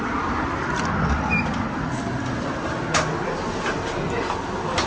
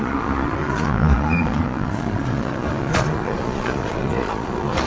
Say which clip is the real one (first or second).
first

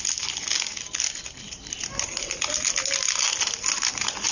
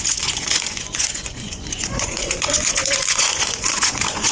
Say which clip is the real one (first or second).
first